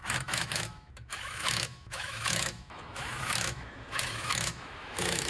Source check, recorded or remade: remade